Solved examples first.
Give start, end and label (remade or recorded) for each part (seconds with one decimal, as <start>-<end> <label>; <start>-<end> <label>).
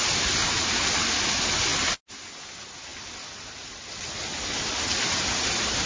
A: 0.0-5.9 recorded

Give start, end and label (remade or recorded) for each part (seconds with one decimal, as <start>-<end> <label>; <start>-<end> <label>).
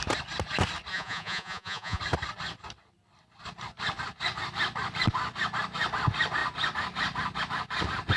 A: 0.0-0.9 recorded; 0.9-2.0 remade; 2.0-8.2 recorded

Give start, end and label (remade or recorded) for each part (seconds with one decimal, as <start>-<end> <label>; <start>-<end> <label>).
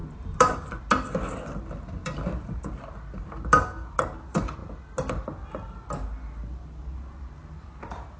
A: 0.0-0.8 remade; 0.8-2.0 recorded; 2.0-2.6 remade; 2.6-8.2 recorded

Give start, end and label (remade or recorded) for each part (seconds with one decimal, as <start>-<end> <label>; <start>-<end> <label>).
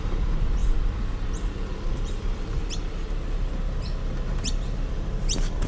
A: 0.0-0.6 remade; 0.6-1.9 recorded; 1.9-5.7 remade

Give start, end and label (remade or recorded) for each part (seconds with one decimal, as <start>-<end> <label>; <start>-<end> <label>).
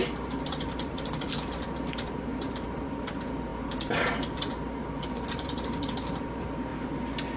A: 0.0-6.7 remade; 6.7-7.4 recorded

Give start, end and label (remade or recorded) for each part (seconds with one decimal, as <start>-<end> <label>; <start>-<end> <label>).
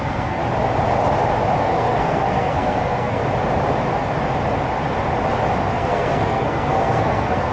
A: 0.0-0.4 remade; 0.4-1.6 recorded; 1.6-3.2 remade; 3.2-5.7 recorded; 5.7-7.5 remade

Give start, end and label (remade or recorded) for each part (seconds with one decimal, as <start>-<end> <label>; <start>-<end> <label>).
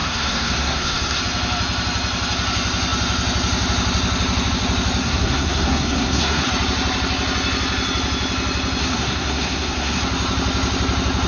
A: 0.0-1.2 remade; 1.2-5.0 recorded; 5.0-6.5 remade; 6.5-8.8 recorded; 8.8-10.0 remade; 10.0-11.3 recorded